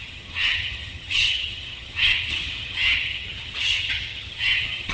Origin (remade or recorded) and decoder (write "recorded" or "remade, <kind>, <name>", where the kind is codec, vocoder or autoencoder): remade, vocoder, HiFi-GAN